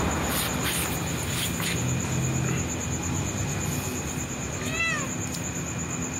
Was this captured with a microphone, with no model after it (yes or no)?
yes